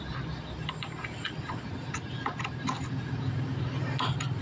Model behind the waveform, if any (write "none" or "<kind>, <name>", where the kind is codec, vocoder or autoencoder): none